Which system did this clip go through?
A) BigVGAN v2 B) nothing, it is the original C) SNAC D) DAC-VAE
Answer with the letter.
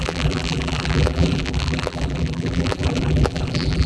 A